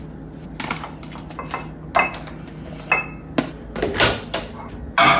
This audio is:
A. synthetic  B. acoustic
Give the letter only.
B